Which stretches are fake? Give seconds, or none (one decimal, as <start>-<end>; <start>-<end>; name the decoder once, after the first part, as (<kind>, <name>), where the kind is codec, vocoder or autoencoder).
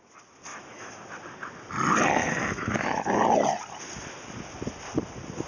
0.5-1.0 (autoencoder, DAC-VAE); 2.2-3.1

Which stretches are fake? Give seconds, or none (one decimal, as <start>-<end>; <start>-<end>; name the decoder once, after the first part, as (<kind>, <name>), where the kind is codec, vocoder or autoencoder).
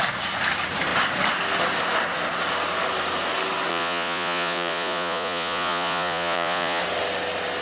3.7-6.8 (vocoder, Vocos)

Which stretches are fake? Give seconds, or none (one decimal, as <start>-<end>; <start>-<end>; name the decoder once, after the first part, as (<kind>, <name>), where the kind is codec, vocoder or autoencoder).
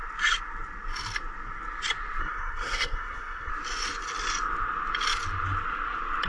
2.2-3.5 (codec, SNAC)